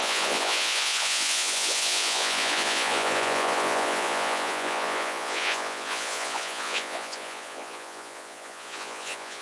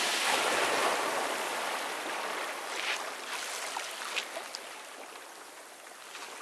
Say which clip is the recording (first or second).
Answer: second